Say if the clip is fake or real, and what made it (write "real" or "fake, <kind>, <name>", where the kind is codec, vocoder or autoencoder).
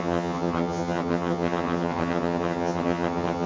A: fake, vocoder, HiFi-GAN